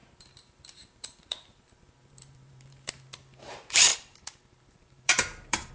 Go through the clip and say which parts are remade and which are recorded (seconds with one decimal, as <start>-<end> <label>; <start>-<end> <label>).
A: 0.0-2.9 remade; 2.9-3.9 recorded; 3.9-5.7 remade